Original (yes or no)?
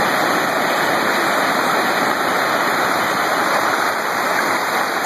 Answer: no